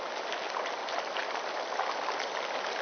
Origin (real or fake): real